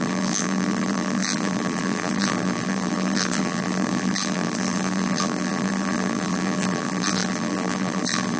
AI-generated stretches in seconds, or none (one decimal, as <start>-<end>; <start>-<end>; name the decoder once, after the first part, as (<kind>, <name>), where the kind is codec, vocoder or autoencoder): 0.0-8.4 (vocoder, BigVGAN v2)